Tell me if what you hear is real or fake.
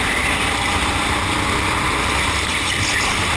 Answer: real